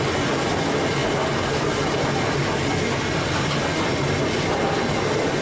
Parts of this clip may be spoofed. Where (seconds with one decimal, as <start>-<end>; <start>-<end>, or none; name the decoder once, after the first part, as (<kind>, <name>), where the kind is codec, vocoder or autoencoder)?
none